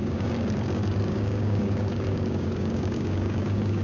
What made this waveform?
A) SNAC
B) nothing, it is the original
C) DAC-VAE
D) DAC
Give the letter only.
D